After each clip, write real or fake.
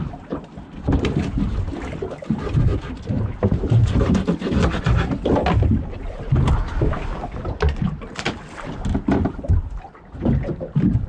real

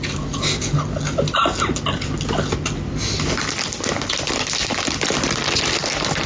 real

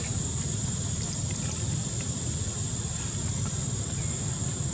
real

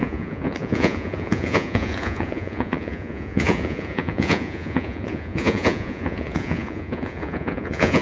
fake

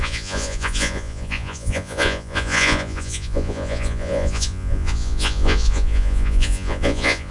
fake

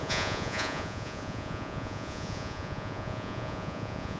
fake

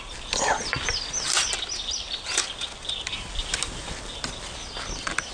real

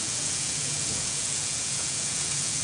fake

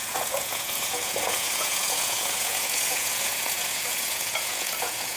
fake